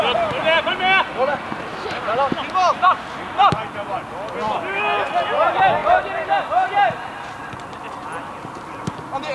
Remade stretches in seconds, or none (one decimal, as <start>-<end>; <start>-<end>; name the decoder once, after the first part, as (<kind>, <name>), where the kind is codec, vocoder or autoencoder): none